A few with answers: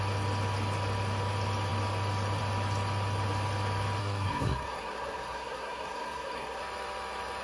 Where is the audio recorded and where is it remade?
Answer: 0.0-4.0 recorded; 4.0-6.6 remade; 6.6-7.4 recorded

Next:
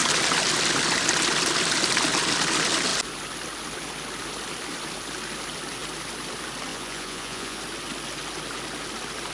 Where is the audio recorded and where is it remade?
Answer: 0.0-6.7 recorded; 6.7-7.6 remade; 7.6-9.3 recorded

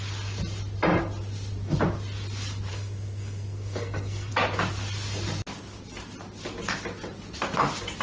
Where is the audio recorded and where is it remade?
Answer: 0.0-2.7 recorded; 2.7-4.3 remade; 4.3-8.0 recorded

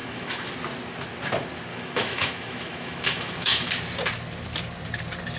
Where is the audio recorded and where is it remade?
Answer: 0.0-0.5 remade; 0.5-1.7 recorded; 1.7-3.7 remade; 3.7-5.4 recorded